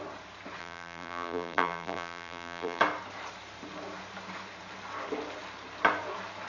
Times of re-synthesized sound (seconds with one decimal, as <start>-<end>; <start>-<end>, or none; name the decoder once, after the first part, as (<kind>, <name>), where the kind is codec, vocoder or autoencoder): 0.6-2.8 (vocoder, BigVGAN v2)